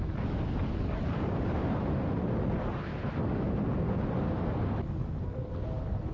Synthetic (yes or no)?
no